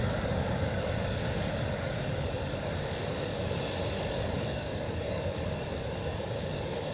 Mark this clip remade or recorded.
remade